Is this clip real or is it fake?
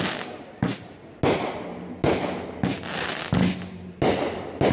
real